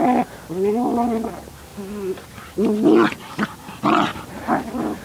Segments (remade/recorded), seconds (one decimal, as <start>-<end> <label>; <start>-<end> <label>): 0.0-5.0 recorded